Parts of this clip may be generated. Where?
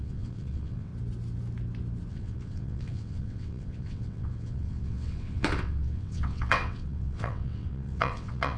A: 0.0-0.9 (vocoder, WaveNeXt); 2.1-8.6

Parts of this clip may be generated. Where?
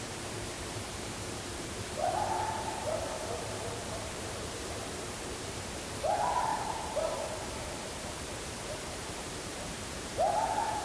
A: 0.0-10.8 (vocoder, BigVGAN v2)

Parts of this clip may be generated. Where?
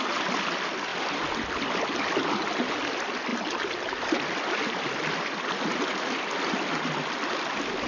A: 0.9-1.5 (vocoder, BigVGAN v2); 3.3-7.1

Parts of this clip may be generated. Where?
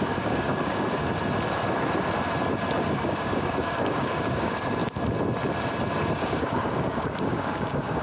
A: 0.0-1.0 (codec, DAC); 3.1-4.8; 6.1-8.0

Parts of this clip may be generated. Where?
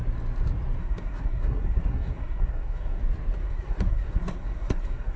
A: 0.8-3.0 (codec, SNAC); 3.4-5.2